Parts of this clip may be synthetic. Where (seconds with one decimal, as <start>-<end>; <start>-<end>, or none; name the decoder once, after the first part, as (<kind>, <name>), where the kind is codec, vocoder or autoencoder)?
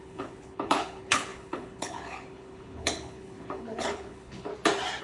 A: 0.0-4.5 (codec, HILCodec)